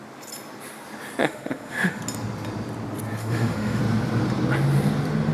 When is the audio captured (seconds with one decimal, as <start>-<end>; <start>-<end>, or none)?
0.0-1.2; 2.0-3.2; 3.8-5.3

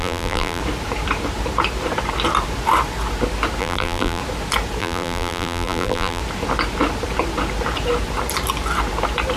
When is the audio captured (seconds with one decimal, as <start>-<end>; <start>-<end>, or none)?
0.6-3.6; 4.2-4.8; 6.2-9.4

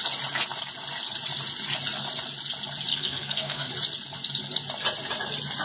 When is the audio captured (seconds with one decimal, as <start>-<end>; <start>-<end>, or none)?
0.0-2.9; 3.7-5.6

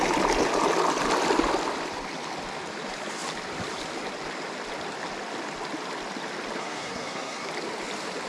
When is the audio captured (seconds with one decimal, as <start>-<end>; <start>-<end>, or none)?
0.0-6.6; 7.5-8.3

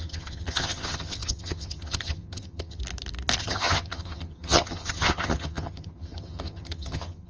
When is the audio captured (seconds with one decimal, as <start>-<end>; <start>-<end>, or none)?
2.8-3.4

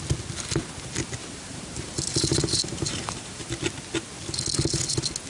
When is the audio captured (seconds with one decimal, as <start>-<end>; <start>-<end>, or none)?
0.0-1.2; 3.5-5.3

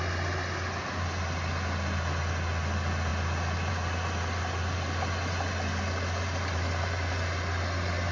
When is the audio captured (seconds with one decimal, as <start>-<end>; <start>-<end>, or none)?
0.0-8.1